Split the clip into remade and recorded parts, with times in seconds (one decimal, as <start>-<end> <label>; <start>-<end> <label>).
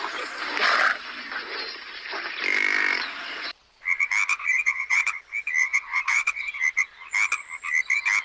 0.0-4.3 recorded; 4.3-5.0 remade; 5.0-5.6 recorded; 5.6-6.6 remade; 6.6-8.2 recorded